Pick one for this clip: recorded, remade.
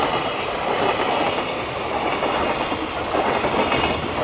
recorded